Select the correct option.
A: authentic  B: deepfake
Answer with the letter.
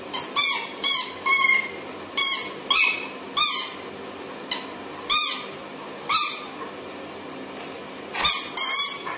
A